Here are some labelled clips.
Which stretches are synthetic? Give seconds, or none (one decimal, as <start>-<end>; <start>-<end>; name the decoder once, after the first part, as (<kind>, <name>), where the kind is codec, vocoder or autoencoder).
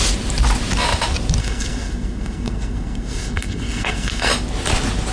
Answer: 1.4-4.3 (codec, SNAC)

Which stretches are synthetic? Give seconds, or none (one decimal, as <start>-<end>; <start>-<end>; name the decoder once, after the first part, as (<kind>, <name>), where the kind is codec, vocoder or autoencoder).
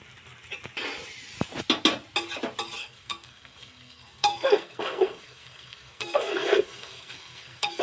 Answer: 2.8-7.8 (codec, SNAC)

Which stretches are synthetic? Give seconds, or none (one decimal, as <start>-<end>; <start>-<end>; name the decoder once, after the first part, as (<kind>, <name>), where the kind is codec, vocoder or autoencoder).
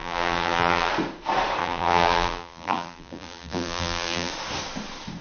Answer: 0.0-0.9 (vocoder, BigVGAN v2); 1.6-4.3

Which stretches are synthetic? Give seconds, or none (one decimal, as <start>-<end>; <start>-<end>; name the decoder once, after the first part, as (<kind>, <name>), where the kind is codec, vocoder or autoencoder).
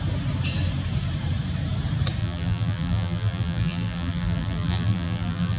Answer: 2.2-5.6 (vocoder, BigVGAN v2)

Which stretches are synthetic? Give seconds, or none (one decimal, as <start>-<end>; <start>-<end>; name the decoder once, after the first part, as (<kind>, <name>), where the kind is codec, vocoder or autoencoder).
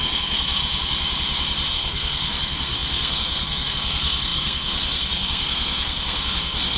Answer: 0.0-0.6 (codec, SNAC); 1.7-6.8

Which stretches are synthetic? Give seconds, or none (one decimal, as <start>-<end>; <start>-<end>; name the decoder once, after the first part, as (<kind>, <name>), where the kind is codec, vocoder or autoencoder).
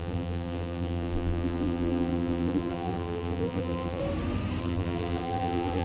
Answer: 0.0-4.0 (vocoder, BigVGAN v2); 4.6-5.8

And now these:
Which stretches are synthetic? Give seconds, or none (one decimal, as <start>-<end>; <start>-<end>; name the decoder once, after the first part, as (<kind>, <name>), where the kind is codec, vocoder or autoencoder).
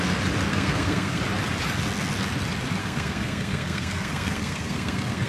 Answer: 0.5-1.2 (codec, SNAC); 2.8-5.3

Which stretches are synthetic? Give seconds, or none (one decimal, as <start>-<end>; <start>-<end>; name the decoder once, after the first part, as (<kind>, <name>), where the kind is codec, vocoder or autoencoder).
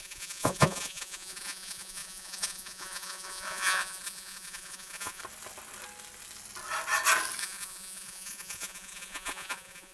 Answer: 0.0-5.2 (vocoder, Vocos); 7.4-9.9